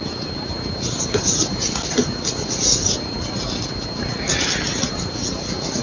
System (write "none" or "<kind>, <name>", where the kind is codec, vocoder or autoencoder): none